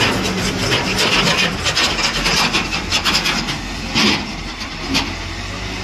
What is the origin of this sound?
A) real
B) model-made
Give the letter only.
A